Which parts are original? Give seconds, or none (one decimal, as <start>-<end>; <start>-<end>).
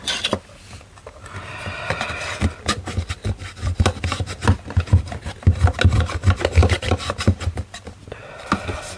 0.0-9.0